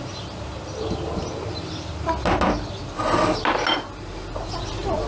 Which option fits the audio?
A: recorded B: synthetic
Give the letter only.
A